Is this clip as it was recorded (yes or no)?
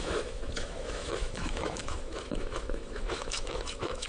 no